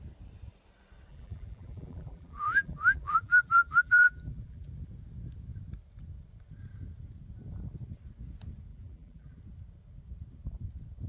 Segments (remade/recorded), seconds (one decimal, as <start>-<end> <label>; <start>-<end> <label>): 0.0-1.1 recorded; 1.1-4.7 remade; 4.7-8.7 recorded; 8.7-9.4 remade; 9.4-11.1 recorded